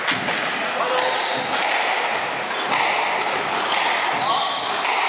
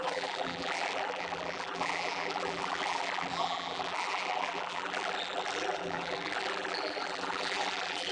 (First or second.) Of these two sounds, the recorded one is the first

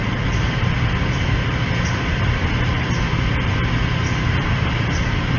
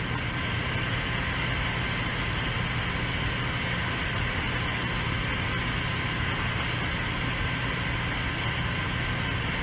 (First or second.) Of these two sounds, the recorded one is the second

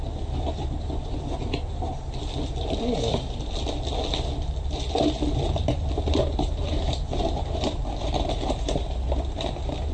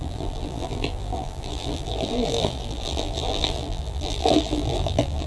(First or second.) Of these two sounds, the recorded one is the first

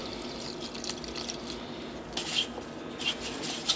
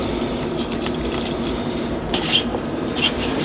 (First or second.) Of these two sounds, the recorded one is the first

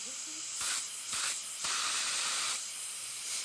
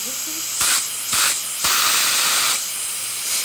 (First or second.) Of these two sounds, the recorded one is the second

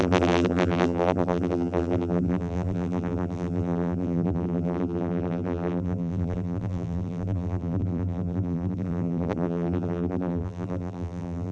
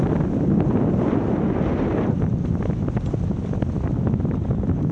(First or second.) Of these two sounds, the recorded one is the second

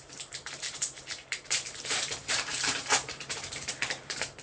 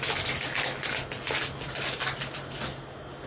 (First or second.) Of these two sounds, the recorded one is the second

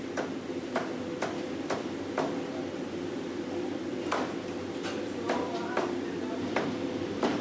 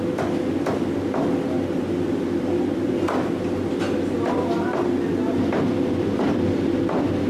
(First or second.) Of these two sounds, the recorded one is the second